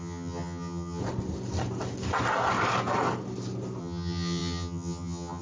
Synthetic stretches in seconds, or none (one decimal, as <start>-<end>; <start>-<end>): 0.0-1.0; 3.8-5.4